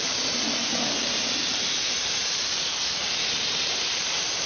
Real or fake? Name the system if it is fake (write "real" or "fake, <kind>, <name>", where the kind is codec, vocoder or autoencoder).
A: fake, vocoder, BigVGAN v2